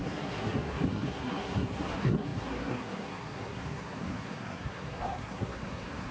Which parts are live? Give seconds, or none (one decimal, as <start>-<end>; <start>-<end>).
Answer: none